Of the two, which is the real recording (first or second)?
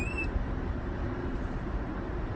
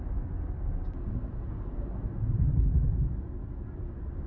second